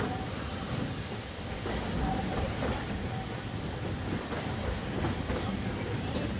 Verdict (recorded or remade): remade